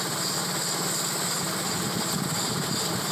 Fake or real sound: real